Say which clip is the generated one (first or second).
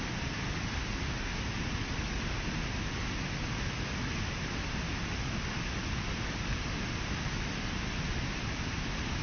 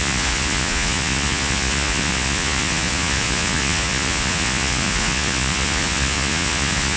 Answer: second